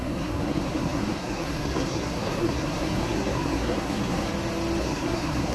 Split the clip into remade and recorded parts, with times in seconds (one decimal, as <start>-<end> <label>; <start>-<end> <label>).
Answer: 0.0-4.3 remade; 4.3-4.8 recorded; 4.8-5.5 remade